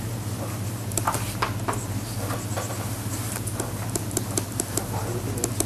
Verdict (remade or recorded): recorded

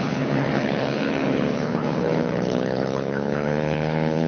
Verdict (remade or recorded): remade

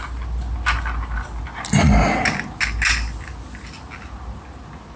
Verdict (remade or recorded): recorded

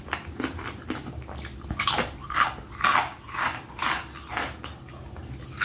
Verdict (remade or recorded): recorded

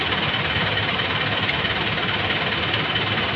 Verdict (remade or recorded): recorded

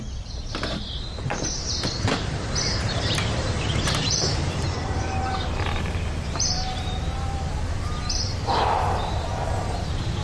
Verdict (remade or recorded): remade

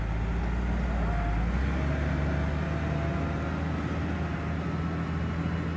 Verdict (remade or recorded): recorded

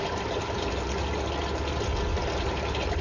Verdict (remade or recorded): recorded